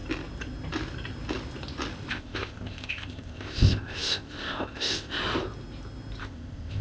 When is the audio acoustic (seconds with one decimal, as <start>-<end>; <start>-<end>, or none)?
0.0-2.1; 5.2-6.2